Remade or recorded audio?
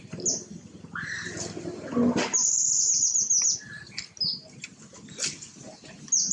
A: recorded